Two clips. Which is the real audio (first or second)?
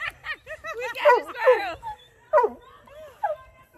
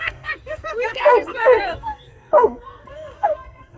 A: first